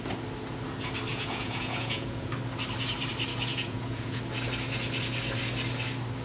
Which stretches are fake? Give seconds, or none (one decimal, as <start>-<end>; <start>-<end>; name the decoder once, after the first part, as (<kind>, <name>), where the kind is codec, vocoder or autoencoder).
1.1-2.3 (vocoder, Vocos); 3.5-4.2